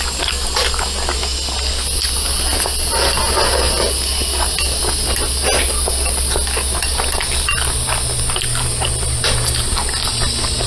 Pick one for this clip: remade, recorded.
recorded